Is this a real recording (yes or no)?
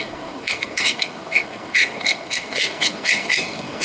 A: no